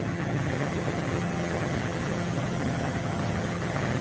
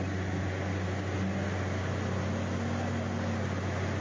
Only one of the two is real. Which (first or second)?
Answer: second